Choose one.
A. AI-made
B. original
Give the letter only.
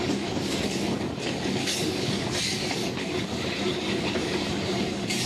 A